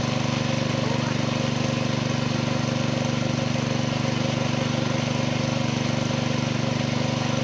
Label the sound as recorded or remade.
recorded